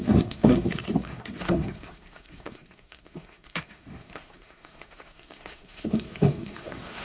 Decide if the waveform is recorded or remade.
remade